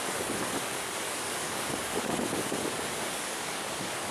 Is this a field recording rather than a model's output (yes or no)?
no